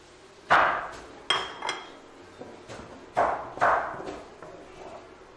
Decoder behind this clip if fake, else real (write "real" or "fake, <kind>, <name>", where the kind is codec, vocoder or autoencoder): real